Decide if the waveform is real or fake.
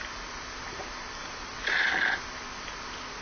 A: real